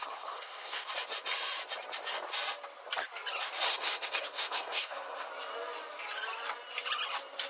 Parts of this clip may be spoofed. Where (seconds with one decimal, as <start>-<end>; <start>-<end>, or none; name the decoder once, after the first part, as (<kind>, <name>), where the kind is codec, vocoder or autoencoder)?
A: 0.0-0.9 (codec, SNAC); 3.7-5.3